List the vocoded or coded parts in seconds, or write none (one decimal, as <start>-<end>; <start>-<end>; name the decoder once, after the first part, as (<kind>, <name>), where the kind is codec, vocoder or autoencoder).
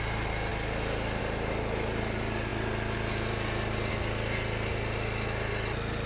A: none